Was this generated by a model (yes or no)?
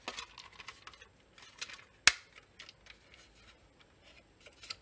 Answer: no